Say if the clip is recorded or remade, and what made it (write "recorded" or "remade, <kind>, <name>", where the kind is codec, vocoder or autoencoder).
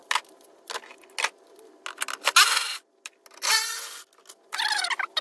recorded